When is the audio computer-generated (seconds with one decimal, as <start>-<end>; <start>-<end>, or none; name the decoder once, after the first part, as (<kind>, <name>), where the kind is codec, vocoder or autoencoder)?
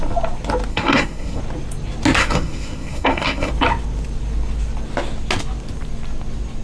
0.7-1.4 (codec, SNAC); 2.2-3.5